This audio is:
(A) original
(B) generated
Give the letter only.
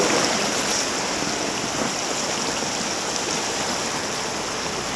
A